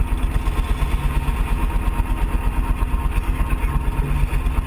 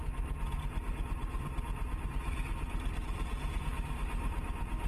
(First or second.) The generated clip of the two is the second